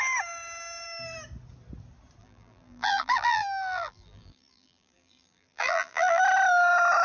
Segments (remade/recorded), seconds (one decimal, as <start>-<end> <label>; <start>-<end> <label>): 0.0-2.2 recorded; 2.2-6.2 remade; 6.2-7.0 recorded